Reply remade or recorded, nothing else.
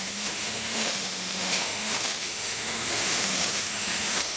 remade